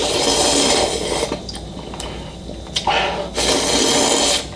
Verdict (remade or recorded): recorded